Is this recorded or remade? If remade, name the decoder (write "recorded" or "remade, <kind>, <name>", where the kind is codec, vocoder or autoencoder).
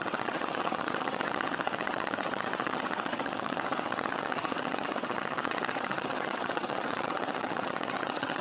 remade, vocoder, WaveNeXt